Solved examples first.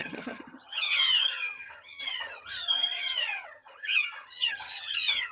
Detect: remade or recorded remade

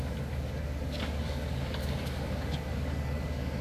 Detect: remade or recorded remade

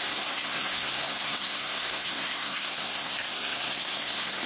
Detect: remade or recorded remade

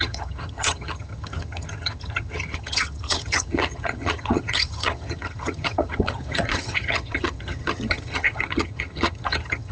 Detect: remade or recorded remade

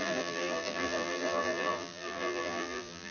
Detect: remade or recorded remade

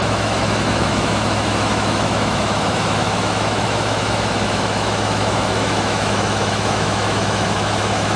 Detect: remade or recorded remade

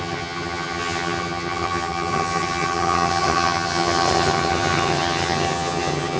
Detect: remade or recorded remade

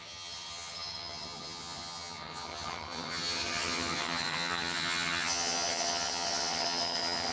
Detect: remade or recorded remade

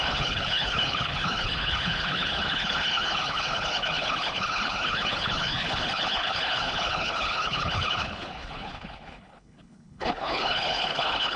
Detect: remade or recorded remade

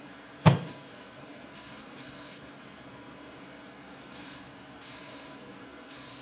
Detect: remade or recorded remade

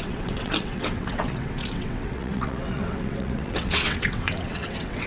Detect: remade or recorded remade